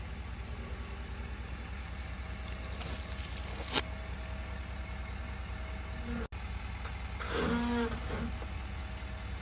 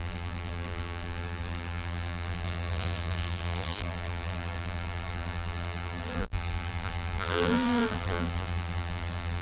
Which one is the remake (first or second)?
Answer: second